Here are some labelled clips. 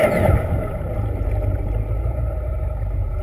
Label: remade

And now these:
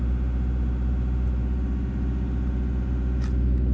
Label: recorded